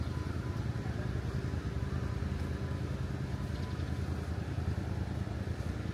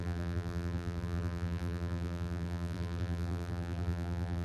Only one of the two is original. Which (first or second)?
first